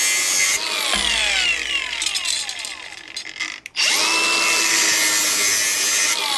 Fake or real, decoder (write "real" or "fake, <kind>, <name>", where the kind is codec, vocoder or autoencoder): real